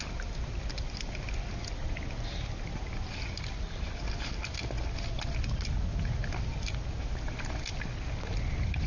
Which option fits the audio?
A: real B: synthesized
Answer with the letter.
A